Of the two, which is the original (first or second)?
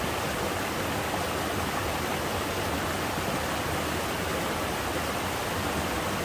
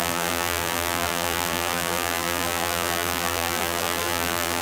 first